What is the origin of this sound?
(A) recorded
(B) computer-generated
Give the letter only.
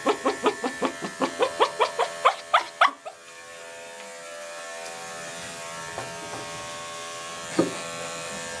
A